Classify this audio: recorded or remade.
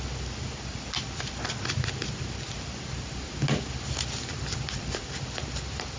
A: recorded